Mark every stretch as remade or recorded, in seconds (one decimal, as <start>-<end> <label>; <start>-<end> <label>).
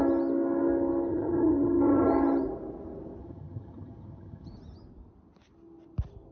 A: 0.0-1.1 recorded; 1.1-2.1 remade; 2.1-3.2 recorded; 3.2-4.5 remade; 4.5-6.3 recorded